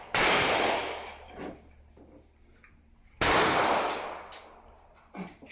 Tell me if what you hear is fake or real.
real